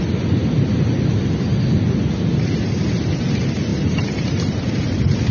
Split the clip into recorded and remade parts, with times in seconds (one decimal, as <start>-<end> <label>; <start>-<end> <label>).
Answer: 0.0-3.7 recorded; 3.7-4.7 remade; 4.7-5.3 recorded